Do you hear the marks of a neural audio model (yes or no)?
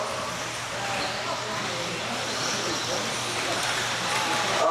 no